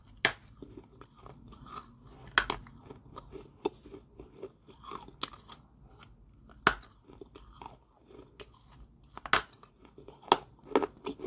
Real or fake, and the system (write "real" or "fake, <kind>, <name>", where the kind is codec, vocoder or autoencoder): real